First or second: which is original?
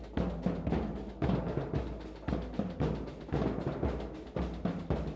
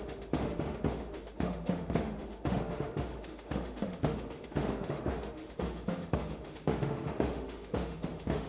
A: first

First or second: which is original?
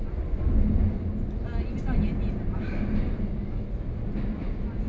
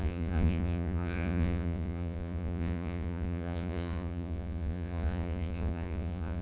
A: first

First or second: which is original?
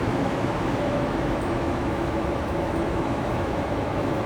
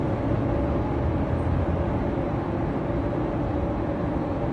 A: second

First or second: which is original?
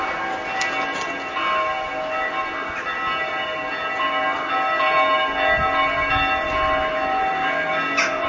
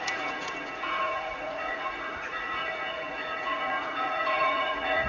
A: first